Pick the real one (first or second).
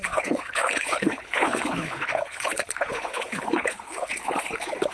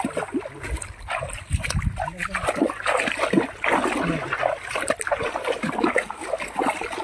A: second